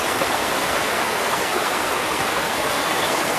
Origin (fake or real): fake